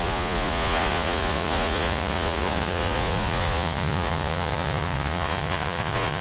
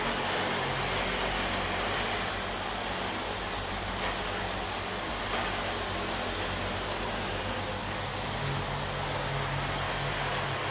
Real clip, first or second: second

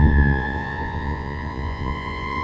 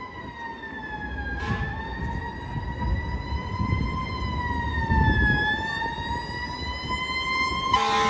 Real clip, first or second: second